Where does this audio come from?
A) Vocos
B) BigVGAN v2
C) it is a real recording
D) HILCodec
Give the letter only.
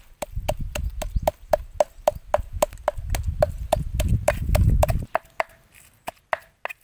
C